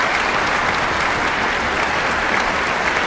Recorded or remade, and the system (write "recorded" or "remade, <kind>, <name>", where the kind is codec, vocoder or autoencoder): recorded